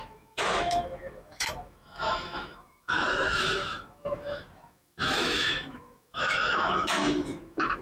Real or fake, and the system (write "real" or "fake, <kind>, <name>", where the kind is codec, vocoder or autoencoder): fake, autoencoder, DAC-VAE